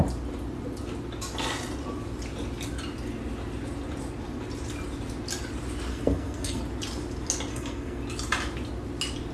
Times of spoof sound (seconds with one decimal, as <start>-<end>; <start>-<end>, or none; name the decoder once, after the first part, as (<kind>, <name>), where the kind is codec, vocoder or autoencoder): 5.9-6.6 (codec, SNAC); 7.5-8.0